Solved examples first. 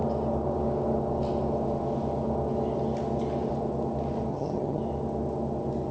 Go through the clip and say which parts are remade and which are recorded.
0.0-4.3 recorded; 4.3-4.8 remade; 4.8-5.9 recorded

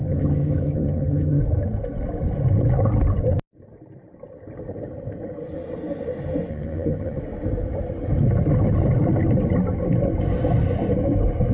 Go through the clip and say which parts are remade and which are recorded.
0.0-1.4 remade; 1.4-6.5 recorded; 6.5-7.2 remade; 7.2-11.5 recorded

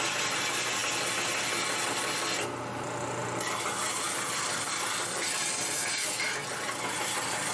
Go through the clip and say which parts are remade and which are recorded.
0.0-7.5 recorded

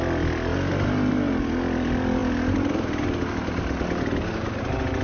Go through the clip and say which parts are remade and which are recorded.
0.0-5.0 recorded

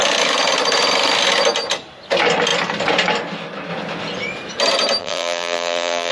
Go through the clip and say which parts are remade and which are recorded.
0.0-5.0 recorded; 5.0-6.1 remade

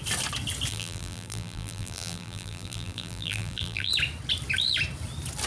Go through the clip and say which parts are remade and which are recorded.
0.0-0.7 recorded; 0.7-3.9 remade; 3.9-5.5 recorded

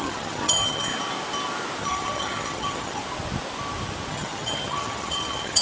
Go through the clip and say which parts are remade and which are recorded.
0.0-0.9 remade; 0.9-1.8 recorded; 1.8-3.0 remade; 3.0-4.1 recorded; 4.1-5.6 remade